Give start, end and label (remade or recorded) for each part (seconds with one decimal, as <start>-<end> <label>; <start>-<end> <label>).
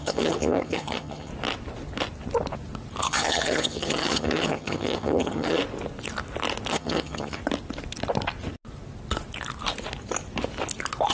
0.0-1.3 remade; 1.3-3.0 recorded; 3.0-5.6 remade; 5.6-6.7 recorded; 6.7-7.4 remade; 7.4-11.1 recorded